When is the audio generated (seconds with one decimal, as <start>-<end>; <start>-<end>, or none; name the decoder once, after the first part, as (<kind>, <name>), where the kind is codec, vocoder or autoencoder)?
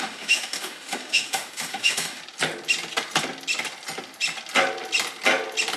0.0-2.2 (autoencoder, DAC-VAE)